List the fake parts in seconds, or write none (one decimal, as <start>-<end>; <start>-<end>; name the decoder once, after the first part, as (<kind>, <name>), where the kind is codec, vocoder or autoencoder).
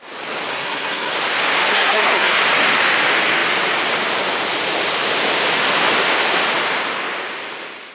0.5-1.1 (codec, SNAC); 1.7-2.4